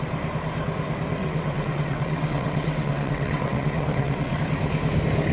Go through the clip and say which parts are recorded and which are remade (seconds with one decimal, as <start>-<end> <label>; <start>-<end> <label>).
0.0-1.2 recorded; 1.2-4.4 remade; 4.4-5.3 recorded